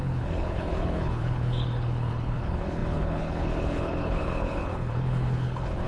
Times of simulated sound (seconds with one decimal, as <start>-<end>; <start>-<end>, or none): 0.0-5.9